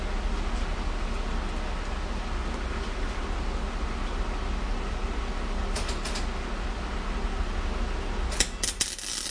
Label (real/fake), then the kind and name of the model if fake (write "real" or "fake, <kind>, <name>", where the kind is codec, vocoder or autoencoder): real